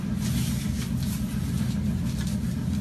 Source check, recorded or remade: recorded